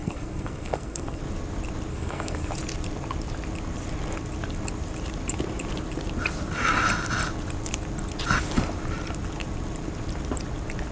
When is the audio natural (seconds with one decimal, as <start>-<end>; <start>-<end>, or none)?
1.2-1.9; 2.5-10.9